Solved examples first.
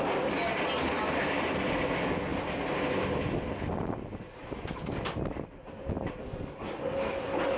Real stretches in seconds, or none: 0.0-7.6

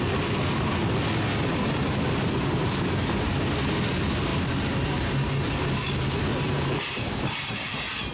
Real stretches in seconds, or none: 0.0-6.3; 7.5-8.1

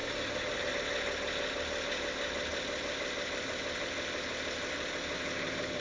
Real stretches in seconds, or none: 0.7-2.5; 4.9-5.8

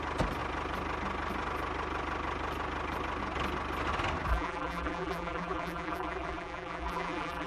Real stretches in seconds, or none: 0.0-4.3